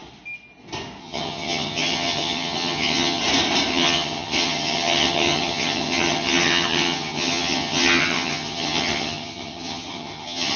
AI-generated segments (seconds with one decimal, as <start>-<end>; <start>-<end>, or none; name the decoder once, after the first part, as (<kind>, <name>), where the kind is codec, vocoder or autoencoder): 1.0-3.2 (vocoder, HiFi-GAN); 3.7-10.6